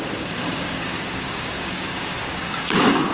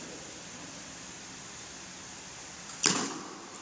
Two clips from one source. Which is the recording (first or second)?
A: second